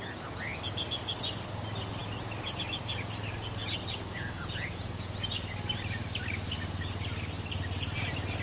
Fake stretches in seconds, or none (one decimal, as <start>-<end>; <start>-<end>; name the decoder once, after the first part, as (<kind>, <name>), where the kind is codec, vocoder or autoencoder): 3.6-5.1 (vocoder, Vocos)